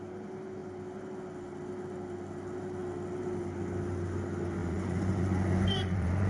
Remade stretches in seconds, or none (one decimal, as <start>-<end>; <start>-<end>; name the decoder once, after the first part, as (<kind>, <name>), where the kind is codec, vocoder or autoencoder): 4.6-6.3 (vocoder, Vocos)